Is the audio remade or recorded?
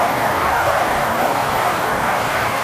remade